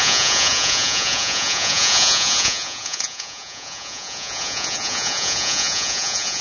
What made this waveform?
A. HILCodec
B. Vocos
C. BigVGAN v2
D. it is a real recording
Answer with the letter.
B